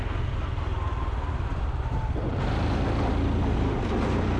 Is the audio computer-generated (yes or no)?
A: no